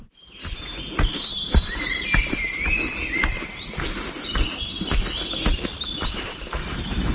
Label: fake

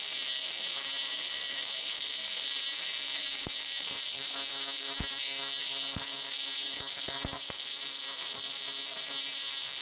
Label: fake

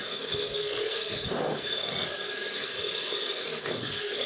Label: fake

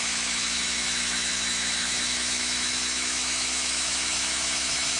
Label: fake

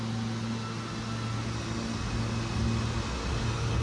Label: real